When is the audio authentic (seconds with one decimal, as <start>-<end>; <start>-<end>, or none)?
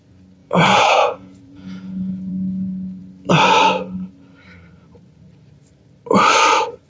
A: 0.0-0.4; 2.3-6.9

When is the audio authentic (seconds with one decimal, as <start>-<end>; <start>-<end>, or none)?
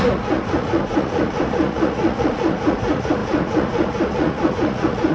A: none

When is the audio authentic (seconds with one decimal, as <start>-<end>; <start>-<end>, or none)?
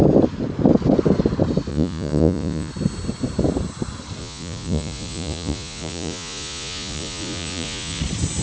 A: 0.0-1.7; 2.7-4.2; 8.0-8.4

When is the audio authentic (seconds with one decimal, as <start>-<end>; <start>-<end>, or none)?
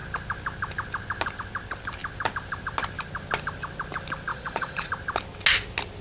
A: 0.0-4.3; 4.9-6.0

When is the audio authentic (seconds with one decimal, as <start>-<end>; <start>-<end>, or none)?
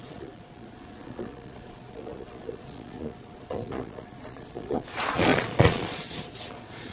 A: none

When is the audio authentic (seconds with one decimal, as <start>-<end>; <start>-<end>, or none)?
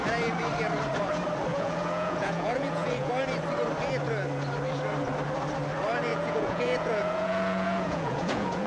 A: 0.0-1.5; 3.1-6.1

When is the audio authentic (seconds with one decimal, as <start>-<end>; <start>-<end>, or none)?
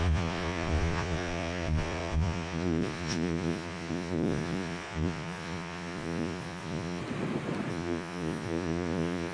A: 7.0-7.7